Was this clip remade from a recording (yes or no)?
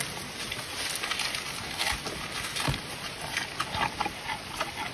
no